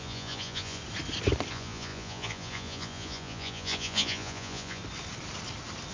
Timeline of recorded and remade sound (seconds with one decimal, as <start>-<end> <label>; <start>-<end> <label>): 0.0-0.8 remade; 0.8-1.5 recorded; 1.5-4.8 remade; 4.8-5.9 recorded